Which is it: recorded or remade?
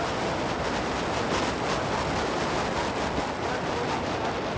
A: recorded